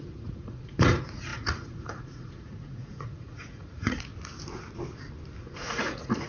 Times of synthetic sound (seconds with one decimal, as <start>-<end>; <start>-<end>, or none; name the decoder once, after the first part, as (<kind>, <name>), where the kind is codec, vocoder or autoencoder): 0.0-4.1 (vocoder, Vocos); 5.4-6.3